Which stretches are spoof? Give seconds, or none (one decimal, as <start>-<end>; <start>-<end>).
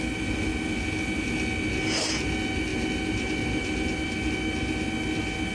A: 2.7-4.3